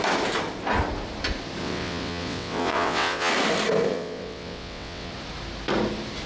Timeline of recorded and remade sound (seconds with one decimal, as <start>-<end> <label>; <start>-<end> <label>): 0.0-1.6 recorded; 1.6-3.3 remade; 3.3-3.9 recorded; 3.9-5.1 remade; 5.1-6.3 recorded